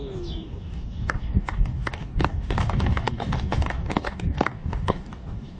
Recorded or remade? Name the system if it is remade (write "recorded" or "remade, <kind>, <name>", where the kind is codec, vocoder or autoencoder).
remade, codec, DAC